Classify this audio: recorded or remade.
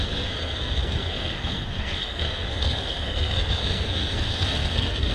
remade